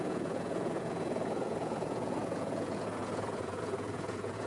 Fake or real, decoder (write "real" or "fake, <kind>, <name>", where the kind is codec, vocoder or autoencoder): fake, vocoder, Vocos